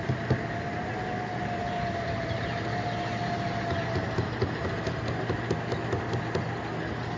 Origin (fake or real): real